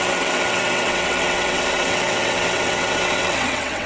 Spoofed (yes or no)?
yes